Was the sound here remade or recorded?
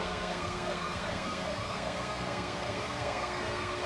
remade